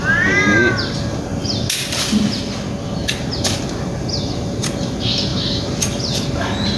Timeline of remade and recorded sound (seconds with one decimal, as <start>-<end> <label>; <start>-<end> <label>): 0.0-6.8 recorded